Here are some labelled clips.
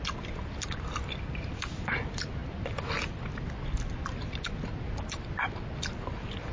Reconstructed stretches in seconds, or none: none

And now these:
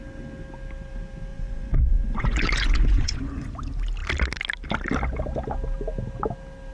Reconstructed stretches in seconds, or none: 1.3-3.5 (vocoder, Vocos)

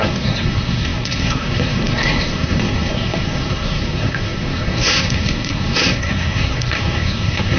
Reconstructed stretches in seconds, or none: 0.0-7.6 (codec, SNAC)

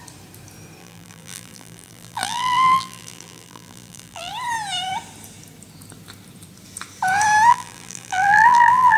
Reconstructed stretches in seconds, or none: 0.8-4.3 (vocoder, BigVGAN v2); 7.5-9.0

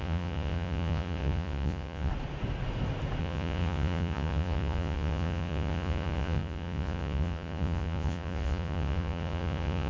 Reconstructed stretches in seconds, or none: 0.0-2.1 (vocoder, Vocos); 3.2-9.9

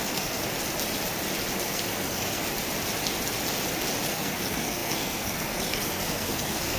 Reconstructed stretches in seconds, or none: 0.0-0.4 (codec, SNAC); 1.6-2.4; 4.1-6.8

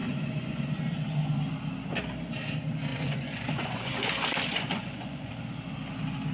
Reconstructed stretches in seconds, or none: 0.0-0.7 (vocoder, Vocos); 2.9-3.9; 4.5-5.3

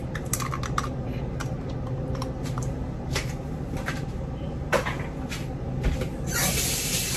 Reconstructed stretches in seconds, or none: none